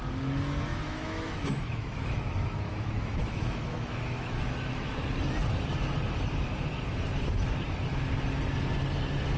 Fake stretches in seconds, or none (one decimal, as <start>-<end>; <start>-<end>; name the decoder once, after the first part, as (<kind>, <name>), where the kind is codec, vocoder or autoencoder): 0.7-5.0 (autoencoder, DAC-VAE)